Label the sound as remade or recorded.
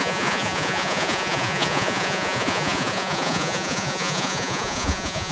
remade